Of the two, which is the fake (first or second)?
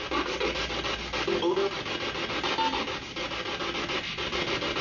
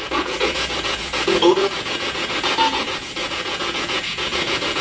second